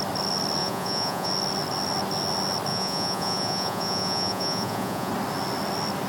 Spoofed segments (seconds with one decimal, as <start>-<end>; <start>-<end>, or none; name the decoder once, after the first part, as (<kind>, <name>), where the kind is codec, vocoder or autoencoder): 0.6-1.3 (vocoder, Vocos); 2.7-5.1